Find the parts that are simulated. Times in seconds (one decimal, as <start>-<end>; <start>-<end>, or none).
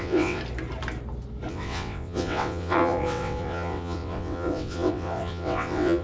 0.0-0.4; 1.5-6.0